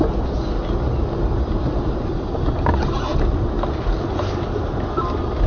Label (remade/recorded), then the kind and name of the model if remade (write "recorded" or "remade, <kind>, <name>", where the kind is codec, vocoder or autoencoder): recorded